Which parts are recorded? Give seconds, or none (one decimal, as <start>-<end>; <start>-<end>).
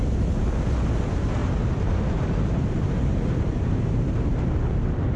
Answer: 0.0-1.4; 4.5-5.2